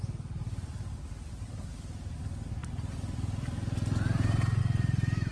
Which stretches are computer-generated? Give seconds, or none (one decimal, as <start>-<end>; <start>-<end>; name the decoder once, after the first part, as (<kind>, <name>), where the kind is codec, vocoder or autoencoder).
none